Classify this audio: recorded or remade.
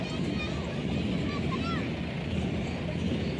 recorded